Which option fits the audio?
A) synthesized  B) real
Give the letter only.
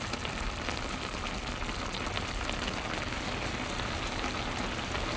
B